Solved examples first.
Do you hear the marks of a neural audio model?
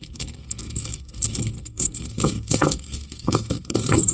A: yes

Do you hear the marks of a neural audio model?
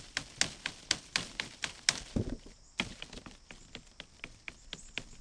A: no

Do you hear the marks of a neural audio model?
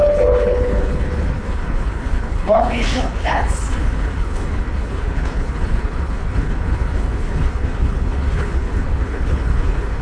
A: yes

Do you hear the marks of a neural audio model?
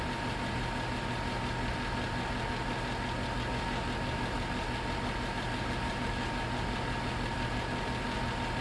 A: no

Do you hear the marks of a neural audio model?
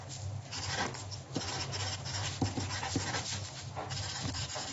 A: no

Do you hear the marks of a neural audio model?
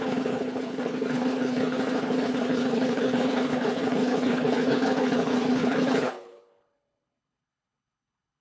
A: yes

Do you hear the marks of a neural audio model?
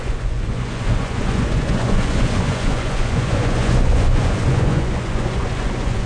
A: yes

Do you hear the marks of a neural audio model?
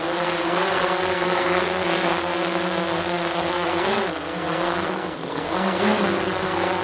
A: yes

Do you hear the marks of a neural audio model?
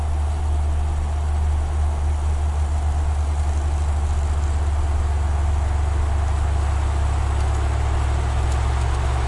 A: no